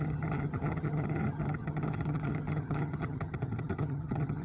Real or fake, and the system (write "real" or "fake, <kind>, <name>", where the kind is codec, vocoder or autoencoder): fake, vocoder, HiFi-GAN